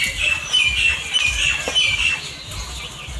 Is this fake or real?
real